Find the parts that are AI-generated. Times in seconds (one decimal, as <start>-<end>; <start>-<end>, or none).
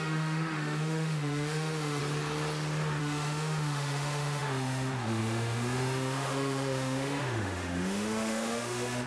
0.0-2.0; 3.0-9.1